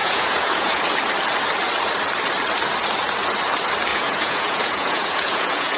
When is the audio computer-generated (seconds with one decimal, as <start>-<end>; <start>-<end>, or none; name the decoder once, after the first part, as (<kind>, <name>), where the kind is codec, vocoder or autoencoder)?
0.0-0.8 (vocoder, Vocos); 3.9-5.8